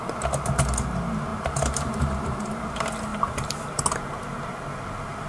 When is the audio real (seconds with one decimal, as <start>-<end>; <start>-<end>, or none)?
0.0-1.3; 2.7-3.1; 3.8-5.3

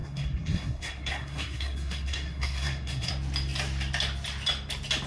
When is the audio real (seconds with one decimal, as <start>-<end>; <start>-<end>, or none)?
3.1-5.1